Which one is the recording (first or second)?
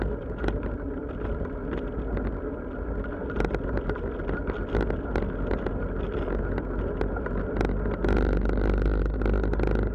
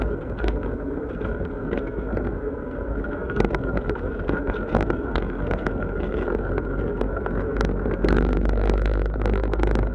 first